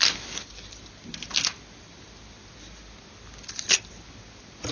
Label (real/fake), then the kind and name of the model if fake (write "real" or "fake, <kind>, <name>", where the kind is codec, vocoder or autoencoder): real